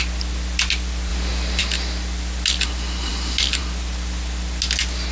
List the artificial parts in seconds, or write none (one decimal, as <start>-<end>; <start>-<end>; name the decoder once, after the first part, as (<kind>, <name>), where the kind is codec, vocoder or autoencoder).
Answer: none